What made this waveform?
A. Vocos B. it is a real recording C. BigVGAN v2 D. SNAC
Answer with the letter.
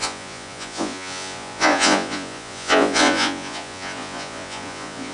A